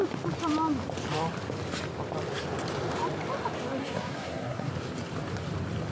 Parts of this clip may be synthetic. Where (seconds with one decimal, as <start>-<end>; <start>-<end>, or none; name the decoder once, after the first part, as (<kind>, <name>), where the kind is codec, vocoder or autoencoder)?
3.8-4.7 (codec, SNAC)